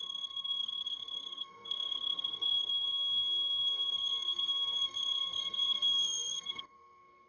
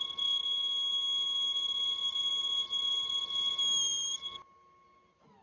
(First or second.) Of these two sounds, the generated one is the first